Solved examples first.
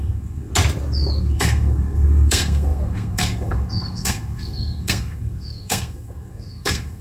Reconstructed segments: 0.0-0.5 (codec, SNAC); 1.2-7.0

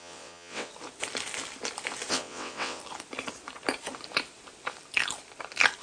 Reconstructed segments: 0.0-0.7 (vocoder, WaveNeXt); 2.1-2.8

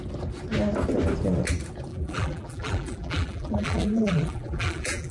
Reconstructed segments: 1.9-5.1 (vocoder, BigVGAN v2)

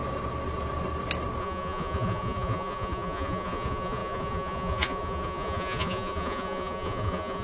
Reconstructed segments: 1.4-7.4 (vocoder, Vocos)

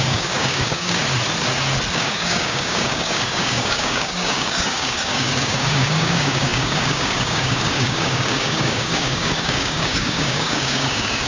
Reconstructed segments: 0.0-1.0 (codec, DAC); 1.9-11.3

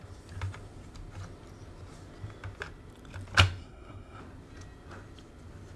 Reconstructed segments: 3.6-4.2 (codec, SNAC)